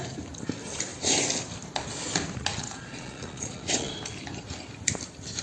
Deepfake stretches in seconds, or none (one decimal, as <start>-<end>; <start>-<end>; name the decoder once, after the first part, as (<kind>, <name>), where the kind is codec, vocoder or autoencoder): 2.6-3.9 (vocoder, Vocos)